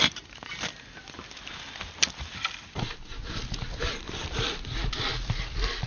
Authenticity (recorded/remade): recorded